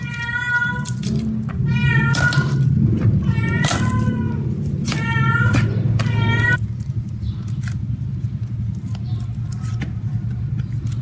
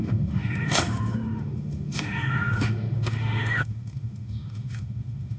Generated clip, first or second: second